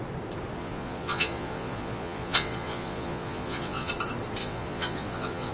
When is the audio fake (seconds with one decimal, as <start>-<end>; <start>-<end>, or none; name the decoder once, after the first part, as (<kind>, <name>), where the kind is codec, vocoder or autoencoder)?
0.6-3.9 (vocoder, Vocos); 4.4-5.5